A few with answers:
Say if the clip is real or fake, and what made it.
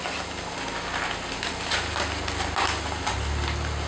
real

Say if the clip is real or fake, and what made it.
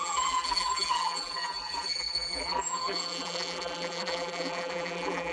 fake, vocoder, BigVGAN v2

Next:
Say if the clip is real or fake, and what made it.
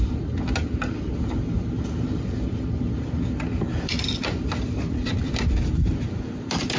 real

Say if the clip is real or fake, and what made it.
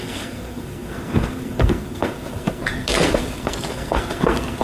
fake, codec, SNAC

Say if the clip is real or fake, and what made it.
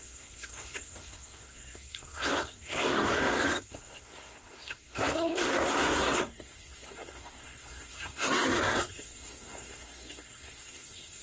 fake, codec, SNAC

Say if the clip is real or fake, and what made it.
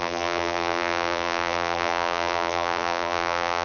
fake, vocoder, BigVGAN v2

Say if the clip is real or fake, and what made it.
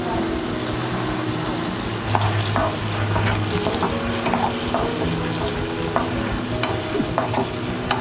real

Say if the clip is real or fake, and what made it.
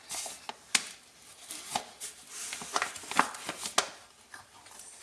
real